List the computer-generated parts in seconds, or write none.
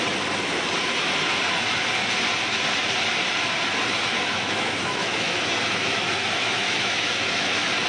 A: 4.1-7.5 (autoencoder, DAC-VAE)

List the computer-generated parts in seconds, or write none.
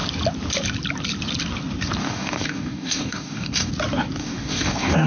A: 2.0-3.7 (codec, DAC); 4.2-5.1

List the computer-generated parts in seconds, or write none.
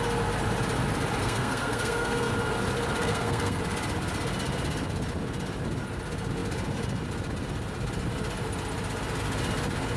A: 1.2-2.3 (codec, SNAC); 3.0-3.6